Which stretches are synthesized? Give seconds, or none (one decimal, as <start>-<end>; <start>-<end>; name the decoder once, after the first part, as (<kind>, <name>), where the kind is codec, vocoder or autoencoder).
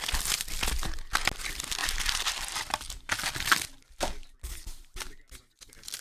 1.8-5.4 (vocoder, BigVGAN v2)